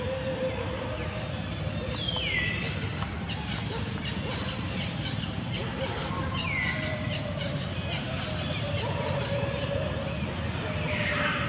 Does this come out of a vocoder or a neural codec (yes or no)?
no